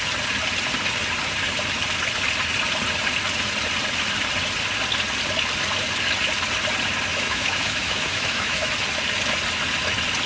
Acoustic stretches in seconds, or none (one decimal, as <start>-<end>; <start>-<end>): 0.0-7.1; 8.7-10.3

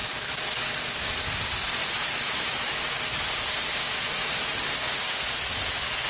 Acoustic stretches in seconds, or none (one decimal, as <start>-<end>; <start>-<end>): 0.0-1.8; 3.0-3.8; 4.3-6.1

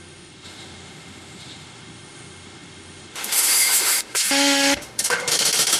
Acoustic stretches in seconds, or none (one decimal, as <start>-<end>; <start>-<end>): none

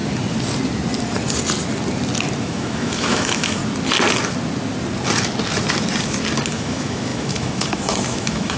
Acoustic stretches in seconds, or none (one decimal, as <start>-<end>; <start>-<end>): 0.0-2.4; 3.6-6.5